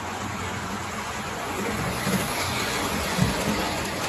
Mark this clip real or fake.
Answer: fake